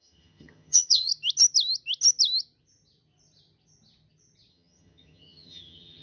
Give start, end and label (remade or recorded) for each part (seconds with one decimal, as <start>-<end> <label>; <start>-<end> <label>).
0.0-1.1 remade; 1.1-4.5 recorded; 4.5-6.0 remade

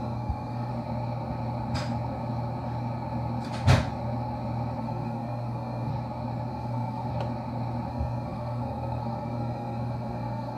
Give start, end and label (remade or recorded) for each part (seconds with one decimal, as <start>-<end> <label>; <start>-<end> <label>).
0.0-0.7 remade; 0.7-4.8 recorded; 4.8-5.9 remade; 5.9-6.5 recorded; 6.5-7.1 remade; 7.1-7.9 recorded; 7.9-10.6 remade

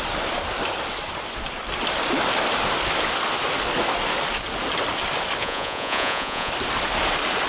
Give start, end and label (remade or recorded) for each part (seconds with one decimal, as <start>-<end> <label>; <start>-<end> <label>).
0.0-5.4 recorded; 5.4-6.5 remade; 6.5-7.5 recorded

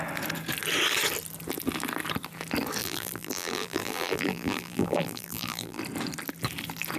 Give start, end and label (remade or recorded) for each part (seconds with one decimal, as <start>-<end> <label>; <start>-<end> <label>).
0.0-2.8 recorded; 2.8-5.8 remade; 5.8-7.0 recorded

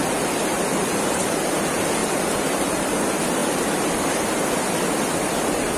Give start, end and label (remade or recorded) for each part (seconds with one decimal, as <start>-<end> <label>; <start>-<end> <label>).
0.0-0.4 recorded; 0.4-1.4 remade; 1.4-5.8 recorded

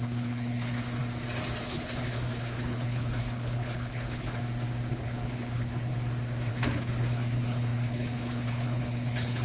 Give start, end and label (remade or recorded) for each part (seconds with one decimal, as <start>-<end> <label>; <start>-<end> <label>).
0.0-1.0 remade; 1.0-1.6 recorded; 1.6-4.4 remade; 4.4-4.9 recorded; 4.9-5.9 remade; 5.9-6.5 recorded; 6.5-9.4 remade